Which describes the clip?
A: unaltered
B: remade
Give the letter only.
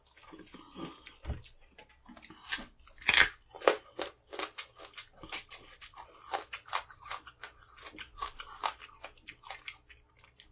A